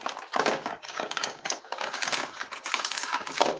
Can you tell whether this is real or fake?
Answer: fake